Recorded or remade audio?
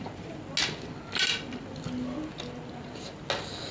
recorded